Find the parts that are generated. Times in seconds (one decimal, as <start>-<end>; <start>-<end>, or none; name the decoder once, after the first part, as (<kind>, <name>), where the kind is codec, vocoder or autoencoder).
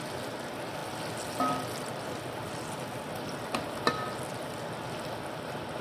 none